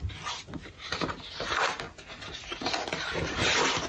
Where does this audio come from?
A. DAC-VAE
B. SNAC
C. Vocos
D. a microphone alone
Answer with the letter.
D